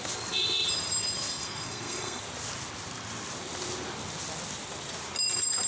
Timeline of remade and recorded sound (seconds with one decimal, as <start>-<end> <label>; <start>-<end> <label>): 0.0-1.3 recorded; 1.3-2.2 remade; 2.2-5.7 recorded